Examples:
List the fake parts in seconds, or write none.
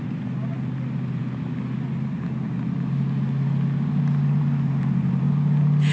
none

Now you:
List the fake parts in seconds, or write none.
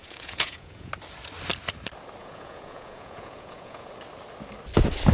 0.0-0.9 (vocoder, Vocos); 2.2-3.9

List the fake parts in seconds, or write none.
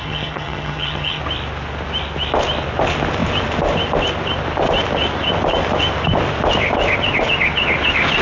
0.0-1.2 (vocoder, HiFi-GAN)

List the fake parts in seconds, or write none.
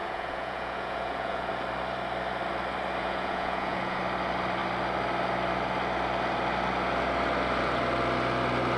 0.0-1.5 (vocoder, Vocos); 3.0-4.0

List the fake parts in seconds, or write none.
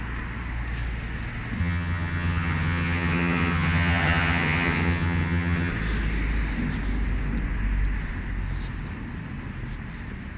1.6-5.7 (vocoder, HiFi-GAN)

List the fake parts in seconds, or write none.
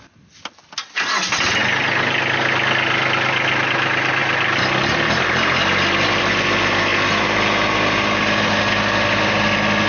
none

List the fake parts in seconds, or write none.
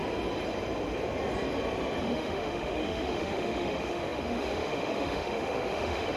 2.0-6.2 (autoencoder, DAC-VAE)